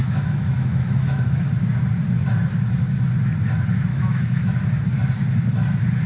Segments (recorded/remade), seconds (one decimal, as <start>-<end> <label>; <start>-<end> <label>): 0.0-1.5 remade; 1.5-3.9 recorded; 3.9-4.5 remade; 4.5-6.1 recorded